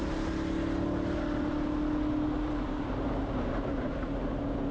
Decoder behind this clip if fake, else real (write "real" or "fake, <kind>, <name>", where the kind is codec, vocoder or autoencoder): real